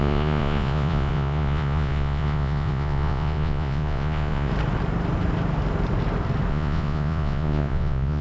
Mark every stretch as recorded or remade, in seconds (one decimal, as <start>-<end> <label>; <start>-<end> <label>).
0.0-4.5 remade; 4.5-6.5 recorded; 6.5-8.2 remade